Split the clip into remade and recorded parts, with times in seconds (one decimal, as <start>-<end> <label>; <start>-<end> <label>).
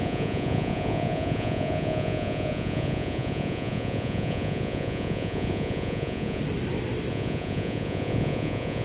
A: 0.0-6.4 remade; 6.4-7.1 recorded; 7.1-8.8 remade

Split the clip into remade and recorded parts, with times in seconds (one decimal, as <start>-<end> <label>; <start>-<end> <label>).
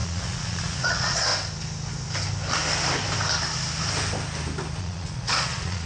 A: 0.0-1.3 remade; 1.3-4.8 recorded; 4.8-5.9 remade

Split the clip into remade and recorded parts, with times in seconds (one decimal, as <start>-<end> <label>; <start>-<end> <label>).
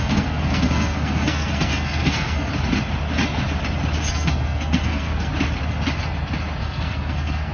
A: 0.0-2.5 remade; 2.5-4.1 recorded; 4.1-5.3 remade; 5.3-6.6 recorded; 6.6-7.5 remade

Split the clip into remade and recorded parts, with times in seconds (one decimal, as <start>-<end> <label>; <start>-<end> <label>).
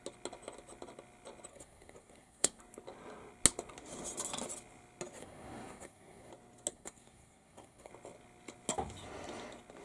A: 0.0-1.5 recorded; 1.5-2.6 remade; 2.6-5.2 recorded; 5.2-6.3 remade; 6.3-6.7 recorded; 6.7-7.9 remade; 7.9-9.8 recorded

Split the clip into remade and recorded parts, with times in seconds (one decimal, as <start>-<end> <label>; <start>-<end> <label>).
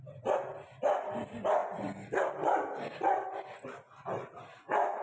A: 0.0-5.0 recorded